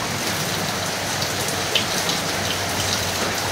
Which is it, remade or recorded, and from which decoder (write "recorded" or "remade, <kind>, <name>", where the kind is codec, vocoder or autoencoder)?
remade, vocoder, BigVGAN v2